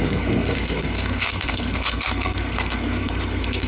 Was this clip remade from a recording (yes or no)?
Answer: yes